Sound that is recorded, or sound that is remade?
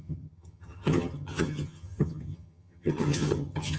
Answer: remade